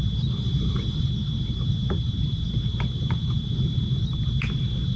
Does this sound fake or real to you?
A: real